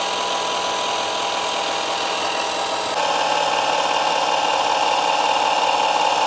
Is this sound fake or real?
real